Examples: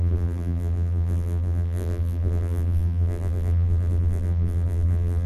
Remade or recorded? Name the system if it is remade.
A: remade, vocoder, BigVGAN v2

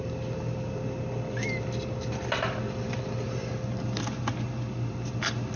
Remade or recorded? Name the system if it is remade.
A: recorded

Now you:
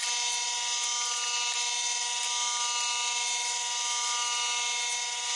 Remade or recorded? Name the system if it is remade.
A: recorded